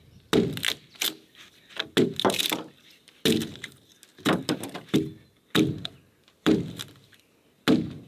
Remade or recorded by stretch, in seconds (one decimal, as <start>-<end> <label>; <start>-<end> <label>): 0.0-8.1 recorded